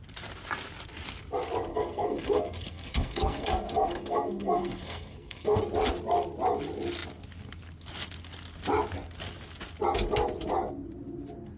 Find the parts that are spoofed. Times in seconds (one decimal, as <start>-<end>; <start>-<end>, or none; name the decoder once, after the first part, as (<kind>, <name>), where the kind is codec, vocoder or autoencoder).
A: 1.7-5.6 (codec, SNAC)